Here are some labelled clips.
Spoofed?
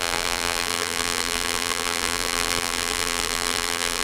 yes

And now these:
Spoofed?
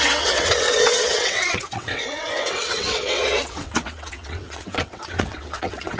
yes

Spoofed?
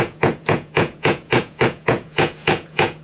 yes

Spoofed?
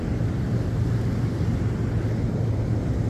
no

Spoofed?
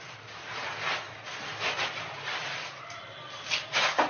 no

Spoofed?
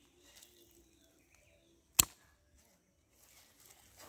no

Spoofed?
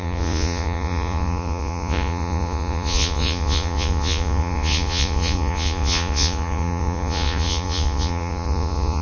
yes